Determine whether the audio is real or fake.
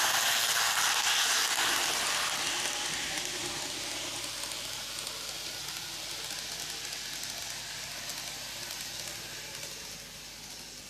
real